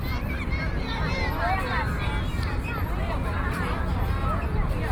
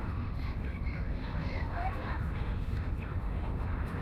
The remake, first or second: second